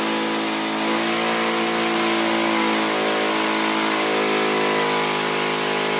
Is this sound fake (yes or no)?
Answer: no